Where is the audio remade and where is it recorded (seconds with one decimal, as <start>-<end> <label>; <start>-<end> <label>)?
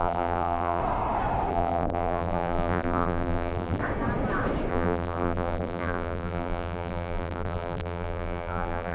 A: 0.0-0.8 remade; 0.8-1.5 recorded; 1.5-3.8 remade; 3.8-4.7 recorded; 4.7-8.9 remade